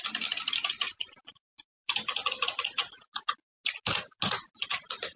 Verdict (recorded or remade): recorded